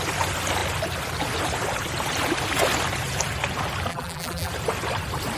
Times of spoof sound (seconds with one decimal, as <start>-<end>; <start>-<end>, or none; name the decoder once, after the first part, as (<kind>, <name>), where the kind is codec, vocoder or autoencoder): 3.9-4.5 (vocoder, BigVGAN v2)